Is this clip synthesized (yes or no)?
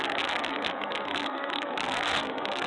yes